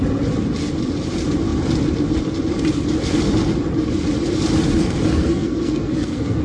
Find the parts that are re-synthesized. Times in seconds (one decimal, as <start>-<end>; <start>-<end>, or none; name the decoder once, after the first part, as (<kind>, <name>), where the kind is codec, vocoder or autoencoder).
4.8-6.4 (codec, SNAC)